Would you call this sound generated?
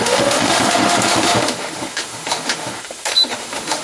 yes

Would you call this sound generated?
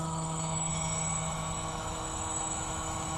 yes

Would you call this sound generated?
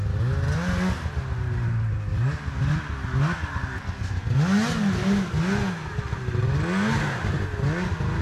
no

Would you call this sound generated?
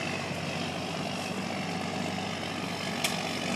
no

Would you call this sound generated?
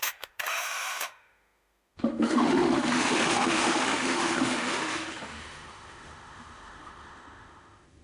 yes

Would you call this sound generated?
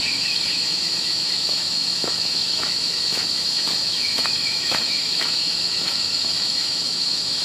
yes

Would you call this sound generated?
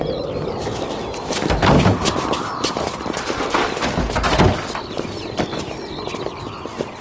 no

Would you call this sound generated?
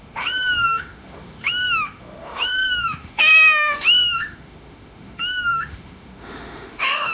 yes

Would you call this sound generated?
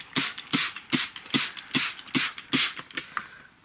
no